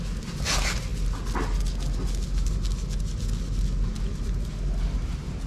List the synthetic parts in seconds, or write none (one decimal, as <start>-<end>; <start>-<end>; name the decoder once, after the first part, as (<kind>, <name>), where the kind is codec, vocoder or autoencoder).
none